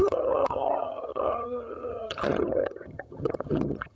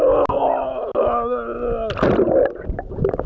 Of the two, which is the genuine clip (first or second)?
second